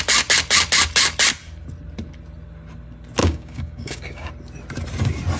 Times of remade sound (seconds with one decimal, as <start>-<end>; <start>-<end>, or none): 3.2-4.3